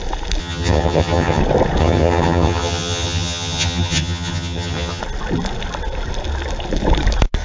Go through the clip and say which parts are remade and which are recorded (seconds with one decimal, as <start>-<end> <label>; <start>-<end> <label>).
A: 0.0-0.4 recorded; 0.4-1.4 remade; 1.4-1.8 recorded; 1.8-5.0 remade; 5.0-7.4 recorded